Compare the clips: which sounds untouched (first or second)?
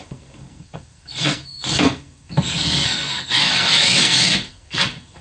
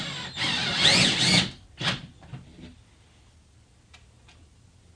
second